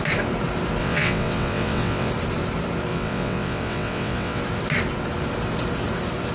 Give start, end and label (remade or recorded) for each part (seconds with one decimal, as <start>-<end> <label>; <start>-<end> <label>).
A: 0.0-0.8 recorded; 0.8-2.1 remade; 2.1-2.9 recorded; 2.9-4.4 remade; 4.4-6.3 recorded